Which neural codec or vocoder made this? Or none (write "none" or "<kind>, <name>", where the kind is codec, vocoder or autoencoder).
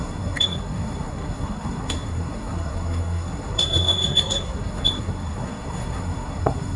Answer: codec, SNAC